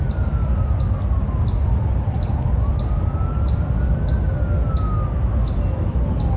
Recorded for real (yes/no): yes